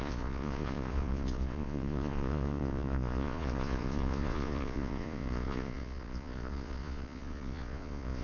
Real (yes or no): no